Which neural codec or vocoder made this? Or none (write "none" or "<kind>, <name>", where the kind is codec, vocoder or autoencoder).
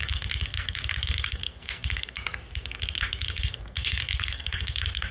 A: codec, SNAC